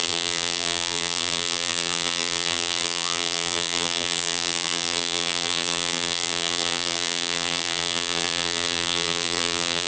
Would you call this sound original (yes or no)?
no